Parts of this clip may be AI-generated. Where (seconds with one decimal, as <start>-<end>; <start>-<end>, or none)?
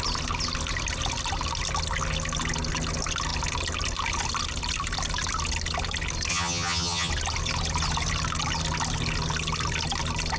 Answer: 6.3-7.1